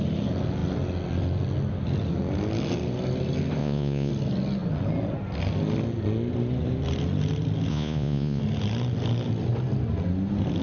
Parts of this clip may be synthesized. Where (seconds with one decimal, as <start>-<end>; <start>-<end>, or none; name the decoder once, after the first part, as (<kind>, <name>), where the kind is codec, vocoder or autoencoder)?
3.6-4.1 (vocoder, Vocos); 7.7-8.4